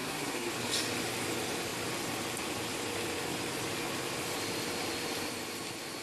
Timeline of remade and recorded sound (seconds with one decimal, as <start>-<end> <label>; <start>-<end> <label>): 0.0-0.5 remade; 0.5-6.0 recorded